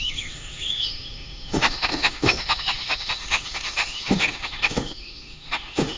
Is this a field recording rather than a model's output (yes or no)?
no